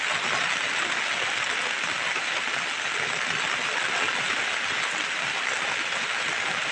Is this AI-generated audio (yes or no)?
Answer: no